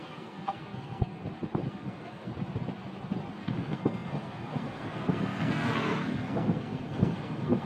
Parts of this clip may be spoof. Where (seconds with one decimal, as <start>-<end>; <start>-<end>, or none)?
0.0-1.2; 1.7-2.3; 3.4-7.7